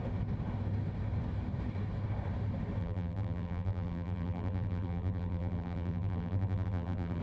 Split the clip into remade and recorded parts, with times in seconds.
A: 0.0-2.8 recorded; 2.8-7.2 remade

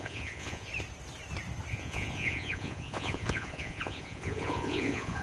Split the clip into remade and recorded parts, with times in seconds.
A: 0.0-0.7 remade; 0.7-1.7 recorded; 1.7-5.2 remade

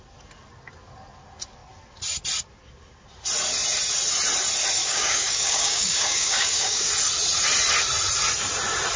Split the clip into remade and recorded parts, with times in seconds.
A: 0.0-4.8 recorded; 4.8-6.9 remade; 6.9-9.0 recorded

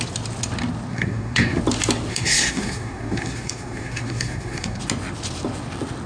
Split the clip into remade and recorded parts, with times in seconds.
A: 0.0-0.9 recorded; 0.9-1.6 remade; 1.6-2.1 recorded; 2.1-4.8 remade; 4.8-6.1 recorded

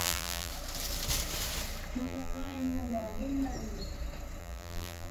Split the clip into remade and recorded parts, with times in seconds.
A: 0.0-0.5 remade; 0.5-2.0 recorded; 2.0-3.2 remade; 3.2-4.4 recorded; 4.4-5.1 remade

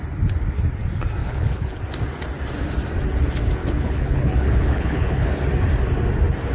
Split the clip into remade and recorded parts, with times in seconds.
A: 0.0-1.2 recorded; 1.2-1.8 remade; 1.8-3.6 recorded; 3.6-5.3 remade; 5.3-6.5 recorded

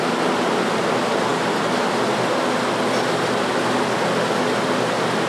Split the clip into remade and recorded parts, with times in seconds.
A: 0.0-5.3 recorded